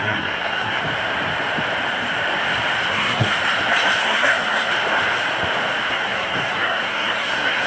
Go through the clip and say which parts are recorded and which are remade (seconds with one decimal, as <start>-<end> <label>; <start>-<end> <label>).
0.0-0.8 remade; 0.8-2.9 recorded; 2.9-3.3 remade; 3.3-4.0 recorded; 4.0-4.7 remade; 4.7-5.9 recorded; 5.9-7.7 remade